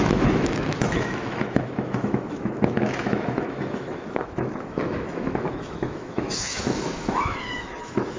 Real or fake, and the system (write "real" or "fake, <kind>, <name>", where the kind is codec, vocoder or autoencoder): fake, autoencoder, DAC-VAE